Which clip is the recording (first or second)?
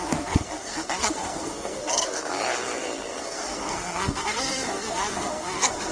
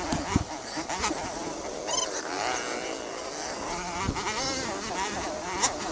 second